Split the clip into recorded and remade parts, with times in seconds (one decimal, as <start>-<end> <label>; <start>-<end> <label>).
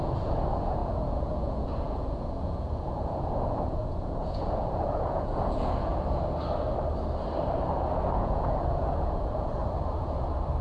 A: 0.0-5.9 remade; 5.9-8.2 recorded; 8.2-9.6 remade; 9.6-10.6 recorded